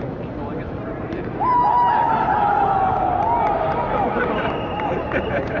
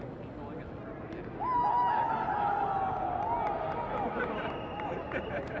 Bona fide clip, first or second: second